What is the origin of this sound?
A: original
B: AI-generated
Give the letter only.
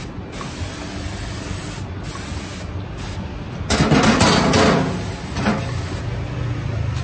A